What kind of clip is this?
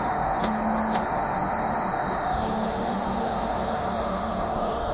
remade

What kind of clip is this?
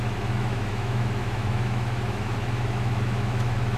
remade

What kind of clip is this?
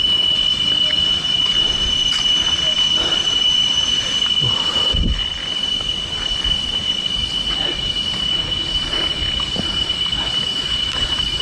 recorded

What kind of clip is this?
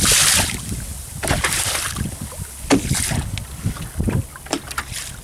recorded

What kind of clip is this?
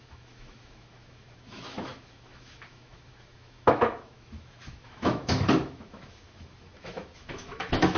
remade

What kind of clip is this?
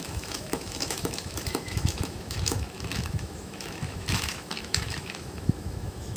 remade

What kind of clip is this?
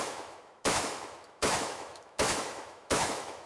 remade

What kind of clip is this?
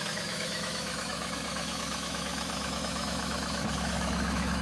remade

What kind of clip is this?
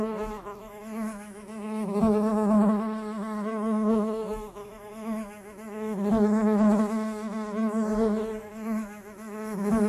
remade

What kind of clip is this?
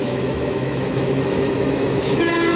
remade